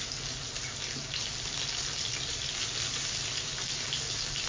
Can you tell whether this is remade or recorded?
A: recorded